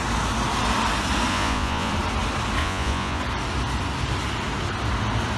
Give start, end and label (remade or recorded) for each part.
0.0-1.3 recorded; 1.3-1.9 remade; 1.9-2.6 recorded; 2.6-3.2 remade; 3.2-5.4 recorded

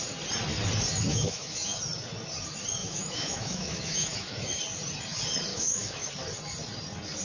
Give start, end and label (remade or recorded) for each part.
0.0-1.1 recorded; 1.1-1.8 remade; 1.8-2.8 recorded; 2.8-4.6 remade; 4.6-5.5 recorded; 5.5-6.1 remade; 6.1-7.2 recorded

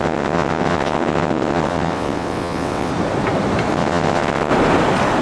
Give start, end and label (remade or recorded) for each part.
0.0-2.9 remade; 2.9-3.7 recorded; 3.7-4.5 remade; 4.5-5.2 recorded

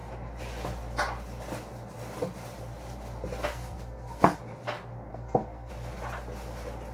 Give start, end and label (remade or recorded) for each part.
0.0-3.5 recorded; 3.5-4.4 remade; 4.4-5.1 recorded; 5.1-5.7 remade; 5.7-6.9 recorded